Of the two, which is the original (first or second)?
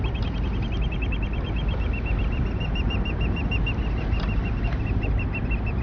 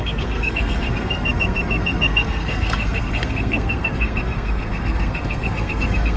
first